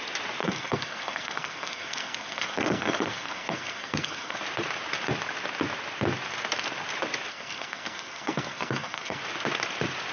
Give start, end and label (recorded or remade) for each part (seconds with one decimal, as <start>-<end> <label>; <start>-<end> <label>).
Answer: 0.0-0.4 recorded; 0.4-4.4 remade; 4.4-7.3 recorded; 7.3-9.2 remade; 9.2-10.1 recorded